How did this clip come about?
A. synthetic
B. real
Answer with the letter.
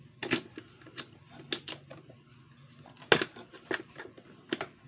B